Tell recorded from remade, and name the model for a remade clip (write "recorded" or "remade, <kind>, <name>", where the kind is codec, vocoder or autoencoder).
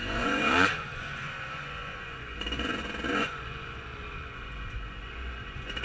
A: remade, vocoder, Vocos